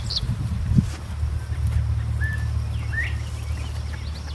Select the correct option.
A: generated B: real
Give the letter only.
B